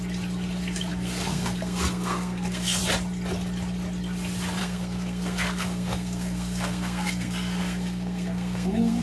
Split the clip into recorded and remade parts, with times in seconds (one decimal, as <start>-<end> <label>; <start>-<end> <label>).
0.0-0.9 recorded; 0.9-2.8 remade; 2.8-4.6 recorded; 4.6-9.0 remade